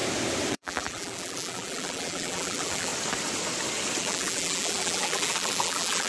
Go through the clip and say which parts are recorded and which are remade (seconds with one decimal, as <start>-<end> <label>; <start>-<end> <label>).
0.0-0.5 recorded; 0.5-2.9 remade; 2.9-4.0 recorded; 4.0-6.1 remade